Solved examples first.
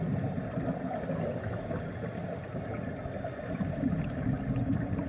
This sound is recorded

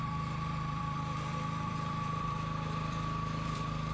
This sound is remade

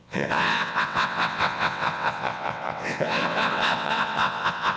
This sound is remade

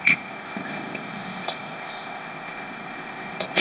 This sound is remade